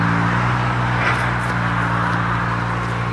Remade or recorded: recorded